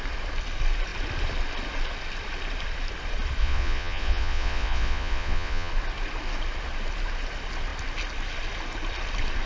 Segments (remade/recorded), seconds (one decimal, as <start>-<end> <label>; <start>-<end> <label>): 0.0-3.4 recorded; 3.4-5.7 remade; 5.7-9.5 recorded